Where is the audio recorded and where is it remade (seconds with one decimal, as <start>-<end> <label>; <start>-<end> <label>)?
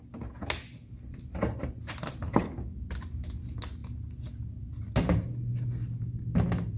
0.0-6.8 recorded